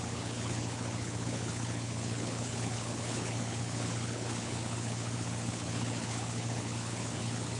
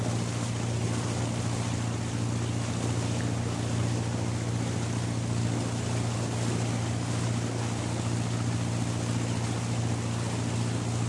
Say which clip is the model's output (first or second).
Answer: first